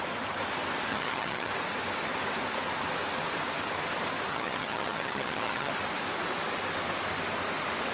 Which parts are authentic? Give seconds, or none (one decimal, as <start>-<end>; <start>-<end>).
0.0-0.9; 1.5-4.3; 5.7-7.9